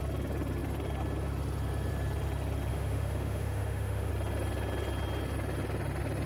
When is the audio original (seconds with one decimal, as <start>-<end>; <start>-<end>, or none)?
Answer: 0.0-2.7; 4.1-6.3